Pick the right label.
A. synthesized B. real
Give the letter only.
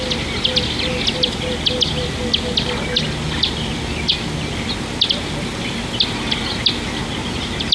B